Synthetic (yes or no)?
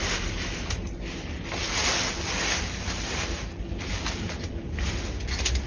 no